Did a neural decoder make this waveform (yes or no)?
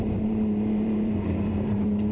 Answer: yes